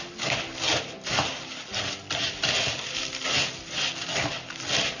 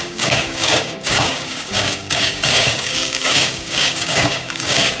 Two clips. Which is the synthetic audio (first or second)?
second